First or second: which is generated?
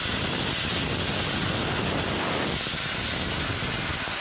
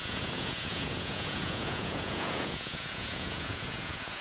second